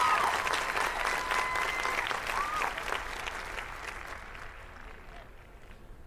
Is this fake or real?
real